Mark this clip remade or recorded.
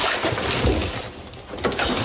recorded